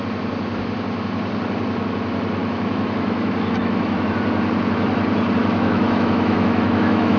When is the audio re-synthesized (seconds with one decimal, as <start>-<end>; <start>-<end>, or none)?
2.4-4.1; 5.4-7.2